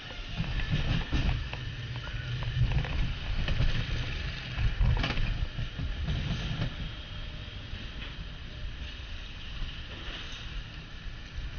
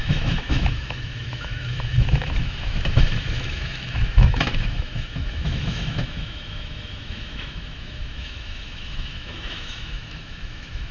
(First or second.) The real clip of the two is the first